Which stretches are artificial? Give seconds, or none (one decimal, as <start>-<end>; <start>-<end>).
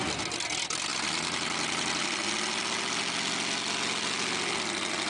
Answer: none